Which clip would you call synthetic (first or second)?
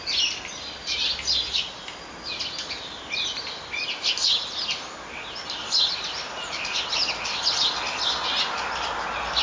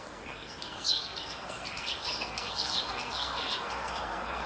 second